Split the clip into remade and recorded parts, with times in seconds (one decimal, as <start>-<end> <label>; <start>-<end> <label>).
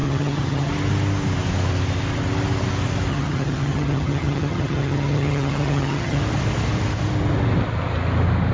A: 0.0-0.7 remade; 0.7-3.1 recorded; 3.1-6.2 remade; 6.2-8.5 recorded